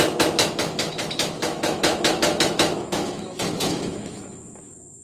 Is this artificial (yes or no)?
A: yes